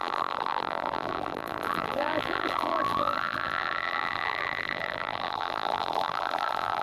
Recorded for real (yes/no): no